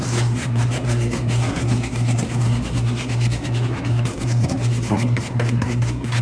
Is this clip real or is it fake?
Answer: fake